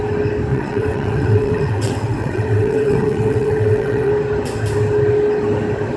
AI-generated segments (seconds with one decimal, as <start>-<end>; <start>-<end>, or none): 0.5-4.1